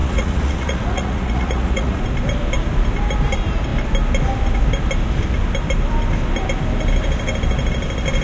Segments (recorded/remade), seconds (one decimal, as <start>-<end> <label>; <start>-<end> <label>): 0.0-2.0 remade; 2.0-8.2 recorded